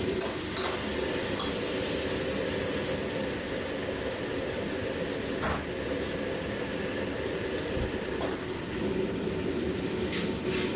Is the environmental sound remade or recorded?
recorded